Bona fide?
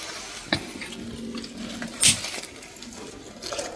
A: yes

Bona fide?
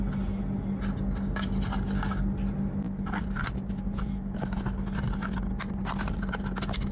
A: yes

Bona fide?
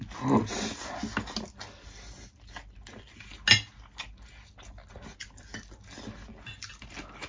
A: yes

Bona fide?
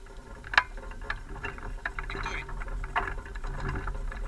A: yes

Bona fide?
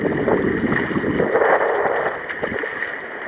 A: yes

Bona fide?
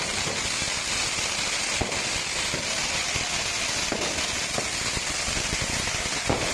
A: yes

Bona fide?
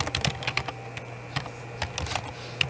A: yes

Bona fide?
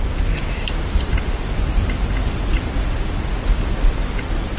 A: yes